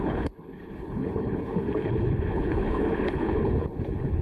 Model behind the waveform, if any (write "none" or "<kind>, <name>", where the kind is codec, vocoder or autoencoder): codec, HILCodec